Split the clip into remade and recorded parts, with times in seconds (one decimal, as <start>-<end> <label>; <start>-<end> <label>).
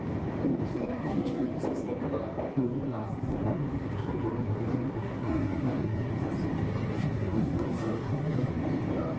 0.0-0.7 recorded; 0.7-1.5 remade; 1.5-2.5 recorded; 2.5-6.1 remade; 6.1-6.7 recorded; 6.7-8.5 remade; 8.5-9.2 recorded